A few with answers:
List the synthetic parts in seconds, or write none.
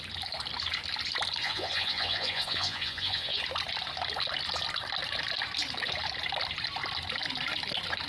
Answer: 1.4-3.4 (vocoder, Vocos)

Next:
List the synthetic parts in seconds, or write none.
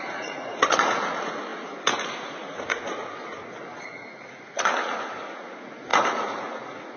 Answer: 0.0-7.0 (vocoder, Vocos)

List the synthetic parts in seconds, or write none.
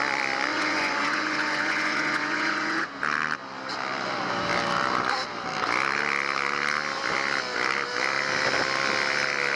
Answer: 0.5-2.9 (vocoder, Vocos)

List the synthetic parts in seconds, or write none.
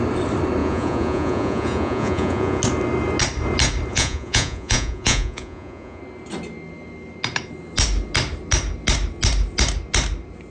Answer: 0.6-2.6 (vocoder, Vocos); 3.9-6.0